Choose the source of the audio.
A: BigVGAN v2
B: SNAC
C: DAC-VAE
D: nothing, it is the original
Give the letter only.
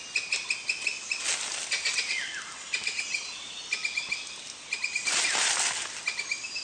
D